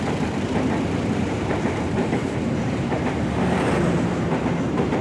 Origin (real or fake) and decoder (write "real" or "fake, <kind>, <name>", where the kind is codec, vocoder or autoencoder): fake, vocoder, BigVGAN v2